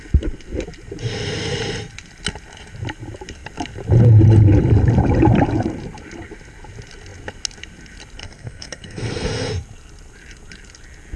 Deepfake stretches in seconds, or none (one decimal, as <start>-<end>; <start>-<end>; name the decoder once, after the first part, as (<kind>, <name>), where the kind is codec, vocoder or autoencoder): 8.2-9.5 (codec, SNAC)